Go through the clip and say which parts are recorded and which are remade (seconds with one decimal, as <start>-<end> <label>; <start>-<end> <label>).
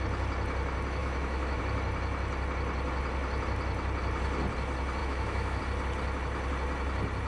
0.0-1.0 recorded; 1.0-1.6 remade; 1.6-5.0 recorded; 5.0-5.6 remade; 5.6-7.3 recorded